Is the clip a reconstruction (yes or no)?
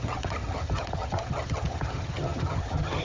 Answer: yes